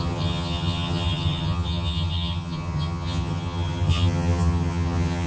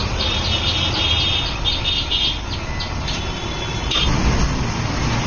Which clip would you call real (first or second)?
second